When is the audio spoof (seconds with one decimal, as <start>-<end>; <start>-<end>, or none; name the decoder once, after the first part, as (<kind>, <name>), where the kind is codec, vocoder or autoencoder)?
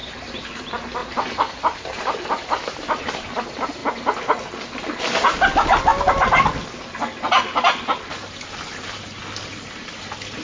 0.0-0.6 (vocoder, BigVGAN v2); 1.0-3.0